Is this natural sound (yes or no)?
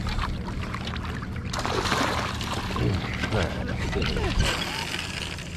yes